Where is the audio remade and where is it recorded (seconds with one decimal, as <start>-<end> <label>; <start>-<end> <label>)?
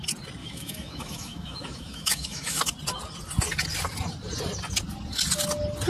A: 0.0-0.4 recorded; 0.4-2.6 remade; 2.6-5.9 recorded